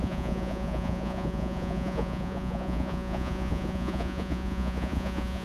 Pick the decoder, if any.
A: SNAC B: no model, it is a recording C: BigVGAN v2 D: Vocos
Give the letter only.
D